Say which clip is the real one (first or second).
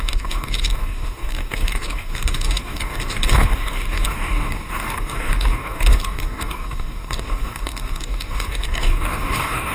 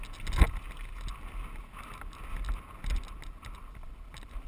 second